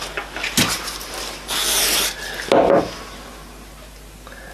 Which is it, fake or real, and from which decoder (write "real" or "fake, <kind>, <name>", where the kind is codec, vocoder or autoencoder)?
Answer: real